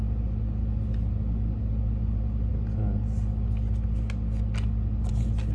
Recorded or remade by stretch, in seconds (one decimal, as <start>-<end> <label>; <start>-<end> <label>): 0.0-5.5 recorded